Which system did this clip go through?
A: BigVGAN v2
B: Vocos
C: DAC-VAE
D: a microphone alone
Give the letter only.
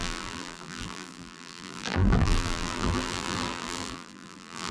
A